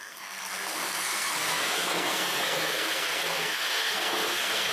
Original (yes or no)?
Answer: no